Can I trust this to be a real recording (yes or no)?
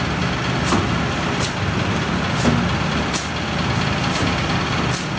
yes